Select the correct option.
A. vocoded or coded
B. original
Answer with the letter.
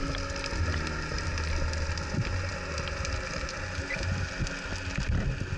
B